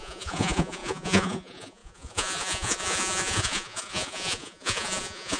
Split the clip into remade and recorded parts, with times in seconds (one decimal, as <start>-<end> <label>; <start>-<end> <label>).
0.0-5.4 remade